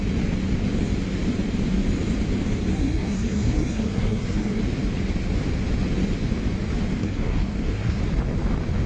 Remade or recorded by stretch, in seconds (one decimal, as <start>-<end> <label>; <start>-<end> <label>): 0.0-2.7 recorded; 2.7-4.6 remade; 4.6-7.0 recorded; 7.0-8.0 remade; 8.0-8.9 recorded